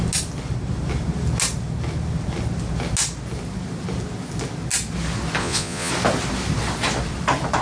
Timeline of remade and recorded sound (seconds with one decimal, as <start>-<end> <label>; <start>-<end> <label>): 0.0-5.4 recorded; 5.4-5.9 remade; 5.9-7.6 recorded